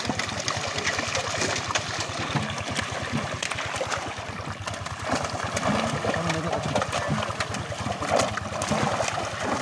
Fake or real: real